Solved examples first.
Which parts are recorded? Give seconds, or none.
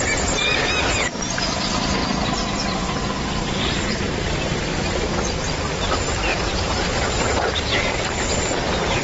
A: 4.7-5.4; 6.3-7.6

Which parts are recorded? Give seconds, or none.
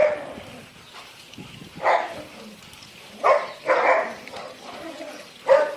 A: 0.0-1.0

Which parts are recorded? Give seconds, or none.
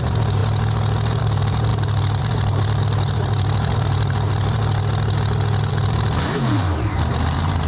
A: 0.4-1.2; 1.7-2.2; 4.6-5.7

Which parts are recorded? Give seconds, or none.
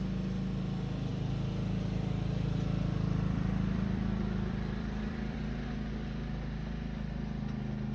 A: 0.0-1.1; 5.4-7.9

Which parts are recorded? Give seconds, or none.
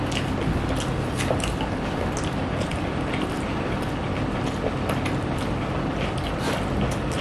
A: 0.0-7.2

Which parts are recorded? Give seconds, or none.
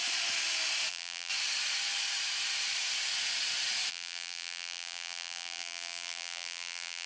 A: 0.0-0.9; 1.3-3.9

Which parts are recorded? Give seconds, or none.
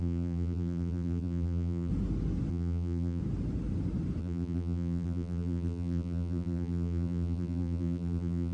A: 1.9-2.5; 3.2-4.2